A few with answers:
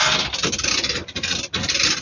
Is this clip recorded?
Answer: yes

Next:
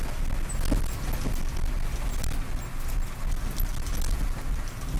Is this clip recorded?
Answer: yes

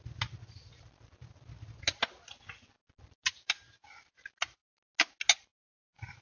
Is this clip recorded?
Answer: yes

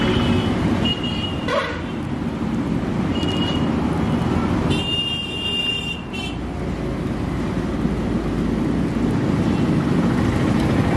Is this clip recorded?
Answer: yes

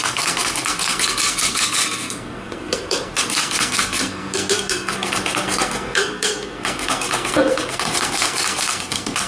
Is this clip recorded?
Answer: no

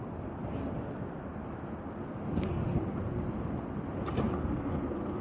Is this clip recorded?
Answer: yes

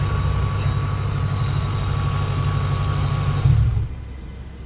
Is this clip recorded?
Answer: yes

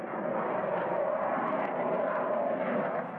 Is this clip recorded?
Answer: yes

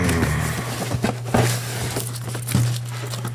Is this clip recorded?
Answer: yes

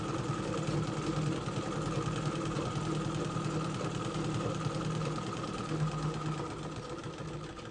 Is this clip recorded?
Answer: yes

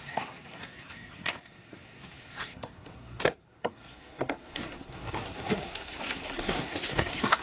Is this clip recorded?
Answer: no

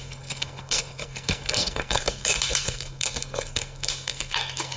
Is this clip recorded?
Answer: no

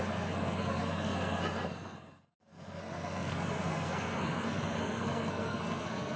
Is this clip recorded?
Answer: no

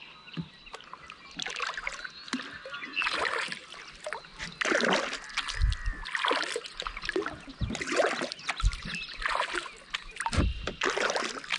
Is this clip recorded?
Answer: yes